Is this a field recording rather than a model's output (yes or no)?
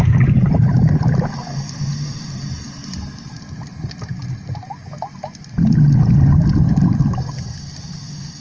yes